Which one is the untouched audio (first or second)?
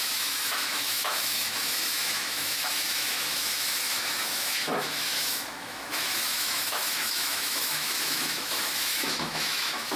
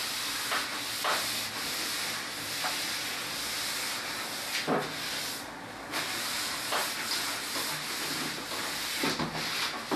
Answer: second